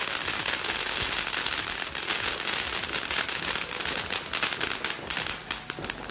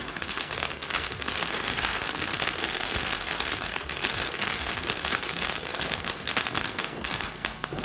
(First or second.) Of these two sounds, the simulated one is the second